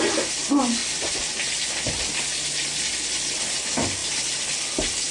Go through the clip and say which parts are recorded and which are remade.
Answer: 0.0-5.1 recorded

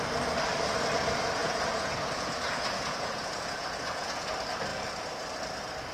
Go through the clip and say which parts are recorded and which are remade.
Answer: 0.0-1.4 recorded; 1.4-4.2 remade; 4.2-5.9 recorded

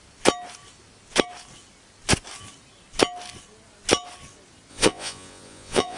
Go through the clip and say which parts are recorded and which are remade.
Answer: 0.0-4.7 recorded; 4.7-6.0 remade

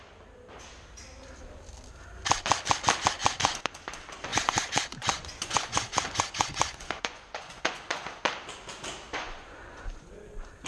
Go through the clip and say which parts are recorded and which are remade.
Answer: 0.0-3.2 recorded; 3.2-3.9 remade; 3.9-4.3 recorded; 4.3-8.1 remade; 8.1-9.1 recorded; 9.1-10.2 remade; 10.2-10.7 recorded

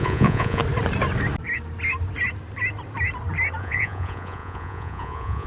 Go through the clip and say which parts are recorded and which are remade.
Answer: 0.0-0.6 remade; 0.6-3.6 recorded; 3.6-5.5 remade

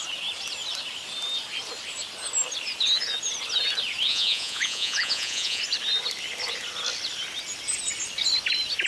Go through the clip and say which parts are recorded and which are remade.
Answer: 0.0-4.1 recorded; 4.1-5.6 remade; 5.6-8.9 recorded